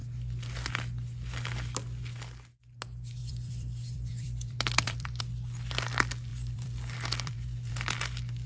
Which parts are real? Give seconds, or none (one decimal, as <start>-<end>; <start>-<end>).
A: 0.0-3.2; 5.2-6.3; 7.7-8.5